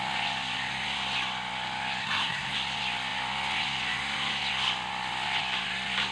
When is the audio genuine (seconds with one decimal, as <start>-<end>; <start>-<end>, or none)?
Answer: 0.0-2.0; 2.5-6.1